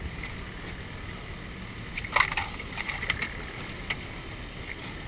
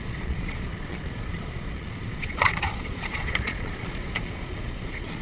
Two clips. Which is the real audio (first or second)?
first